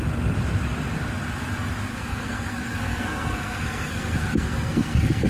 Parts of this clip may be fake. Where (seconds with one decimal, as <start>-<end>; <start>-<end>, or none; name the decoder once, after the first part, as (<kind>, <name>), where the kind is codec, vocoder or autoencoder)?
1.9-5.3 (codec, SNAC)